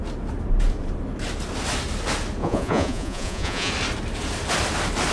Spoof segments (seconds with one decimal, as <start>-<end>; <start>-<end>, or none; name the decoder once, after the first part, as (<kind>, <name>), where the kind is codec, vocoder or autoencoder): 2.4-3.7 (vocoder, Vocos)